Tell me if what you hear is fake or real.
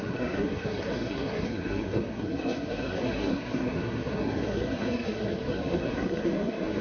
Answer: fake